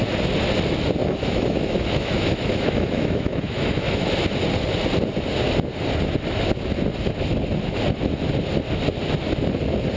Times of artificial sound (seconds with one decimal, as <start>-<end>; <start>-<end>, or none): 1.0-4.1